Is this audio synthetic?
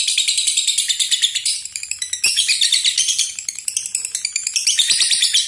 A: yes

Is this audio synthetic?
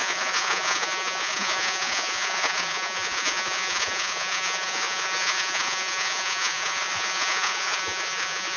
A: yes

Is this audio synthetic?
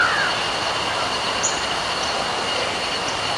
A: no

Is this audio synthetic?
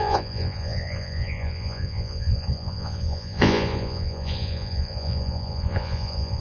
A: yes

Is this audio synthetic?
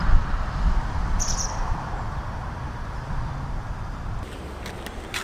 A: no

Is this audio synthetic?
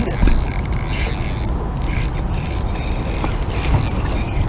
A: no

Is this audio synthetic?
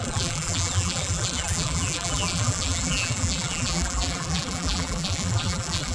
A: yes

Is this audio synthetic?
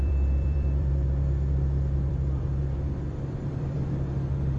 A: yes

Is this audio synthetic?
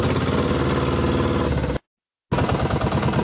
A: no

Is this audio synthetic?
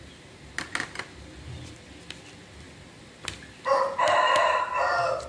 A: no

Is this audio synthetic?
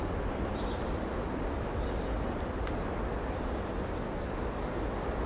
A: no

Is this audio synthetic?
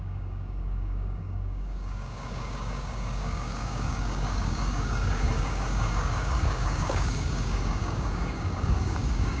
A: yes